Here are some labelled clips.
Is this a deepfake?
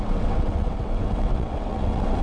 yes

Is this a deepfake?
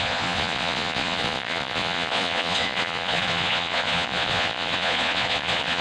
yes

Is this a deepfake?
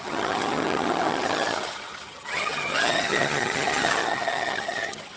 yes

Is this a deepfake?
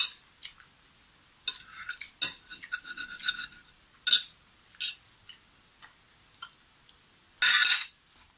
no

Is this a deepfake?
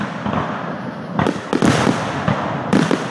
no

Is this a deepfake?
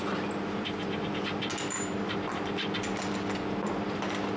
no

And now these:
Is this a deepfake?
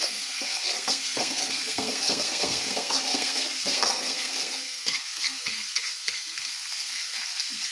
yes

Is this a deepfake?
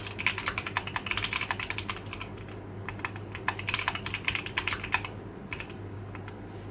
no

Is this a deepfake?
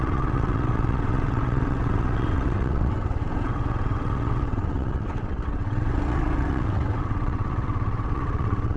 yes